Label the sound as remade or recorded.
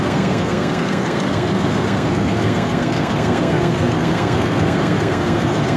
remade